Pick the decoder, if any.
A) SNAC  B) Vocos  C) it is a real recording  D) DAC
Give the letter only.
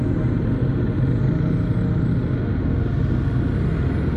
C